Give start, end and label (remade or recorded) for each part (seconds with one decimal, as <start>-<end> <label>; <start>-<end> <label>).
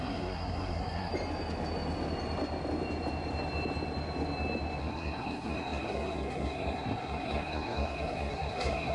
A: 0.0-1.1 remade; 1.1-4.8 recorded; 4.8-8.9 remade